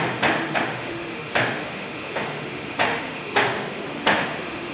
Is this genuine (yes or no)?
no